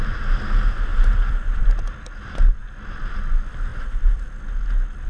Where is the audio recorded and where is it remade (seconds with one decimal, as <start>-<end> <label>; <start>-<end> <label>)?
0.0-0.9 recorded; 0.9-1.6 remade; 1.6-3.7 recorded; 3.7-4.4 remade; 4.4-5.1 recorded

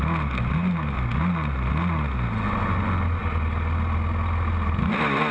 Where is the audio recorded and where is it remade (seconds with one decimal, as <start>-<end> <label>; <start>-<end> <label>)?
0.0-5.3 recorded

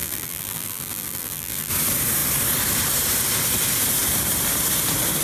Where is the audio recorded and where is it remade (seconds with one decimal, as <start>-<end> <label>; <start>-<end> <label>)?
0.0-1.7 remade; 1.7-5.2 recorded

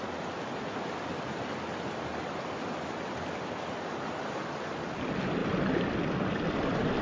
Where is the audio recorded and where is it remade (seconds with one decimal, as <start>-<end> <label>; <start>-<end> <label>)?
0.0-7.0 recorded

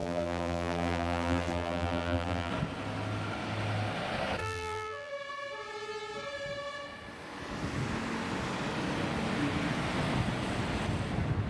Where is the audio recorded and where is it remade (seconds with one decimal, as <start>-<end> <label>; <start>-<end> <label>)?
0.0-2.5 remade; 2.5-4.4 recorded; 4.4-5.1 remade; 5.1-11.5 recorded

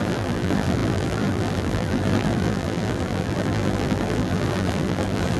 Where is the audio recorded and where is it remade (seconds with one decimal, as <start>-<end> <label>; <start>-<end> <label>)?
0.0-5.4 remade

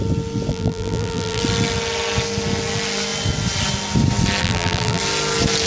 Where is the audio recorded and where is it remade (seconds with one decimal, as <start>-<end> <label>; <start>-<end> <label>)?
0.0-0.5 recorded; 0.5-1.4 remade; 1.4-4.4 recorded; 4.4-5.0 remade; 5.0-5.7 recorded